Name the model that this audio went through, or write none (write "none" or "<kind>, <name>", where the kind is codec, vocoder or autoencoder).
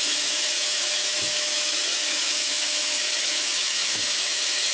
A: autoencoder, DAC-VAE